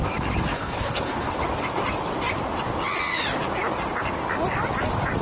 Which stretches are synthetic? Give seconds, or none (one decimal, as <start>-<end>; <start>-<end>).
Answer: 0.5-1.3